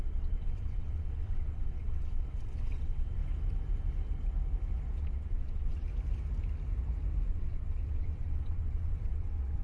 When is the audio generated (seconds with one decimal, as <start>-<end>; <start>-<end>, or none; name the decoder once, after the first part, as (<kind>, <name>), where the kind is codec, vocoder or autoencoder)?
0.0-3.2 (vocoder, WaveNeXt); 5.0-5.9; 7.3-9.6